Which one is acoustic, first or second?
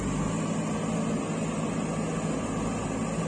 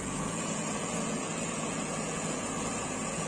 first